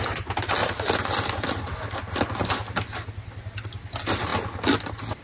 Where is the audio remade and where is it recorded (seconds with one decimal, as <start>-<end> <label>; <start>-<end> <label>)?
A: 0.0-5.2 recorded